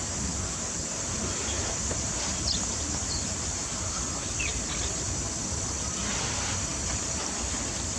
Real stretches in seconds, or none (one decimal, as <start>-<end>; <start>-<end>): 0.0-6.7; 7.4-8.0